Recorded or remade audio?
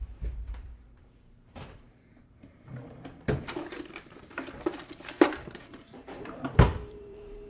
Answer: remade